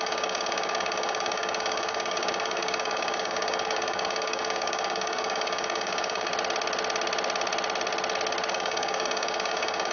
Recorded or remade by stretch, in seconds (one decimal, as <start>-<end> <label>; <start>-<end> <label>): 0.0-6.3 remade; 6.3-8.5 recorded; 8.5-9.9 remade